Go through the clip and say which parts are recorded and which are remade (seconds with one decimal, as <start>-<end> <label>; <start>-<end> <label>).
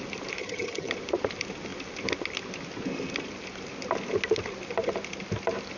0.0-0.4 recorded; 0.4-0.9 remade; 0.9-5.8 recorded